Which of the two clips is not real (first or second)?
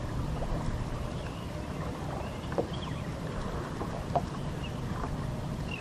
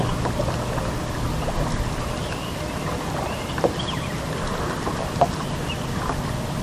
first